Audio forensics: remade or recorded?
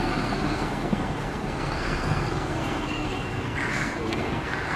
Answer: remade